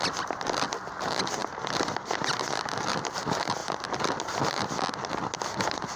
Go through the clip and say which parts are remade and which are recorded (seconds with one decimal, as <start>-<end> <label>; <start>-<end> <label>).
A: 0.0-6.0 recorded